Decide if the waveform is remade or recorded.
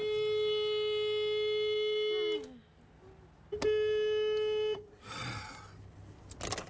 recorded